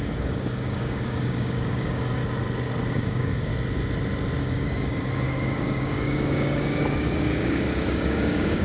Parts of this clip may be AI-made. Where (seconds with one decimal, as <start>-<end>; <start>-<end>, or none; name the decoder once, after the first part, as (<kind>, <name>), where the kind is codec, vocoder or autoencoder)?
0.0-2.2 (codec, DAC); 2.9-3.5; 4.4-8.6